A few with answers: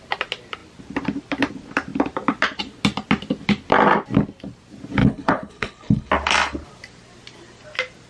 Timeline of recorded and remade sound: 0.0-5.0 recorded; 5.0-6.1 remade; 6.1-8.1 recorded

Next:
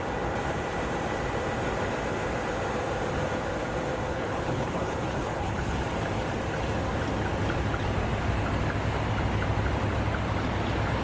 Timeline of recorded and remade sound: 0.0-4.1 recorded; 4.1-5.8 remade; 5.8-11.0 recorded

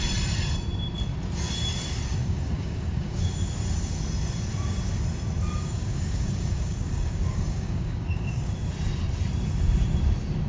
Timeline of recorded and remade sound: 0.0-2.2 recorded; 2.2-3.3 remade; 3.3-5.6 recorded; 5.6-8.5 remade; 8.5-10.5 recorded

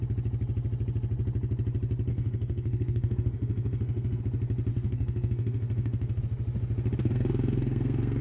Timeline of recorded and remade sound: 0.0-2.1 recorded; 2.1-4.2 remade; 4.2-4.7 recorded; 4.7-6.2 remade; 6.2-7.0 recorded; 7.0-8.2 remade

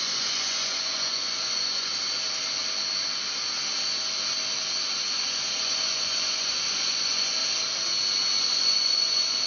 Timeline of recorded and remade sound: 0.0-1.9 remade; 1.9-5.2 recorded; 5.2-7.4 remade; 7.4-8.4 recorded; 8.4-9.5 remade

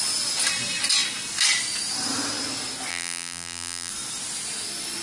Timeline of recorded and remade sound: 0.0-2.9 recorded; 2.9-3.9 remade; 3.9-5.0 recorded